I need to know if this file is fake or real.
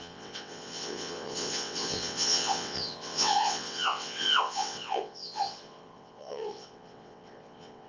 fake